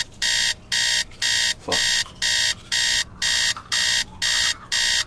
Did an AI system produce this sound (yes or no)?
no